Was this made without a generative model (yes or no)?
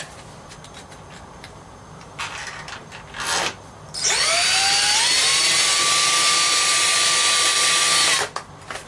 yes